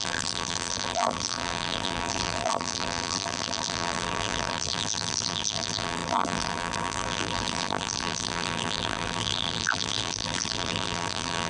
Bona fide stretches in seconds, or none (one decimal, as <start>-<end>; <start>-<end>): none